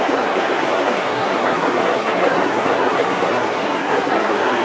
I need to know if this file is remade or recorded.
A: remade